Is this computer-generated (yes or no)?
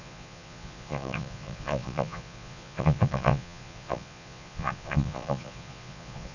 yes